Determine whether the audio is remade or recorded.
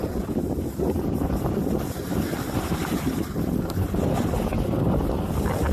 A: recorded